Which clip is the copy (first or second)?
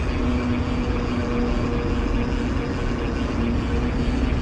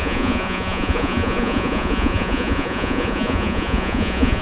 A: second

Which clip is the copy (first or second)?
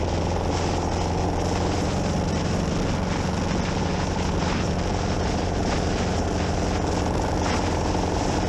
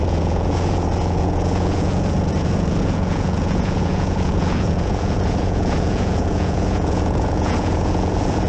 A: second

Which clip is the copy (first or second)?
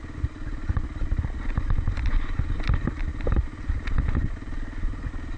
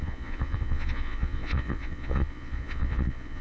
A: second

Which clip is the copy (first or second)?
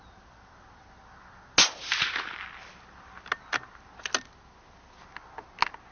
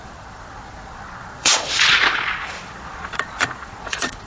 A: second